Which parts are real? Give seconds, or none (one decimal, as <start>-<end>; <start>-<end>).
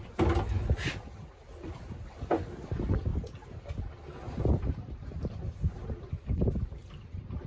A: 0.0-7.5